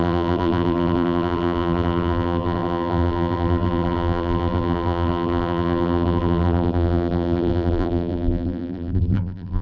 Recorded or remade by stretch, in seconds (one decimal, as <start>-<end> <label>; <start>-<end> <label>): 0.0-9.6 remade